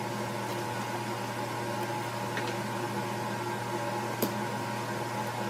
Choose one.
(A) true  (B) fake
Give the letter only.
A